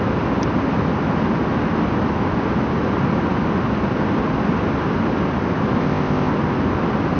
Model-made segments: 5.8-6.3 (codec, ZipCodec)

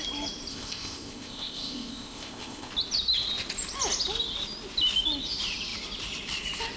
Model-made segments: 0.5-2.7 (codec, ZipCodec)